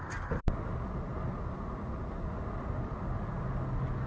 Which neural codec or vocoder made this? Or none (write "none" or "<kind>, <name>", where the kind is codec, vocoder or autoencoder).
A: none